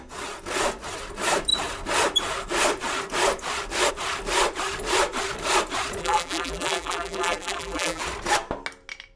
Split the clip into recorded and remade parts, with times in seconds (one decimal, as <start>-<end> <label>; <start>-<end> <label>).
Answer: 0.0-6.0 recorded; 6.0-8.0 remade; 8.0-9.2 recorded